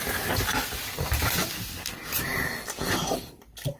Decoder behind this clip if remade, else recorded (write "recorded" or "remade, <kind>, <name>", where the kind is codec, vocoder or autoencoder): recorded